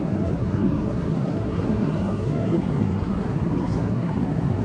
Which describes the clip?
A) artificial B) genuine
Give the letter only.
A